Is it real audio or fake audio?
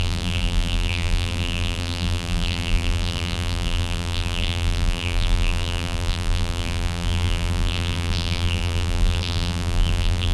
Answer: fake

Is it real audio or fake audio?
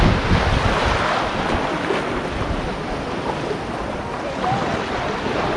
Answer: real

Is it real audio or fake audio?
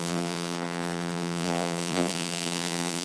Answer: fake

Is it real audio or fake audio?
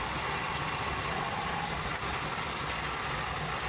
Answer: real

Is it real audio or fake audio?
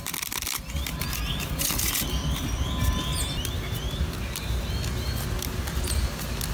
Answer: real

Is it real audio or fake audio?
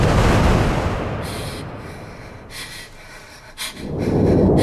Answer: real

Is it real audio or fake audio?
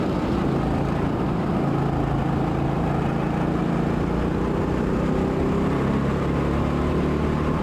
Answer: real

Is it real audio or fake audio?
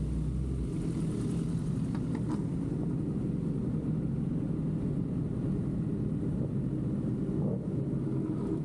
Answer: real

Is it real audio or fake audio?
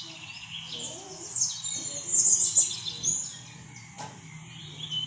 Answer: real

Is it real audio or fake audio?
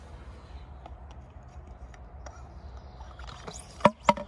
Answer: real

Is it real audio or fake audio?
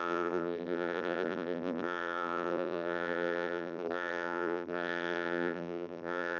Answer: fake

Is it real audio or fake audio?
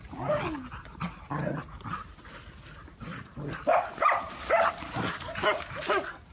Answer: real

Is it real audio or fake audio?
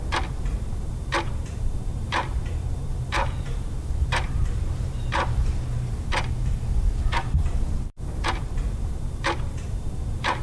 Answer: fake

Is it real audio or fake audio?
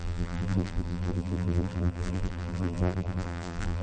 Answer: fake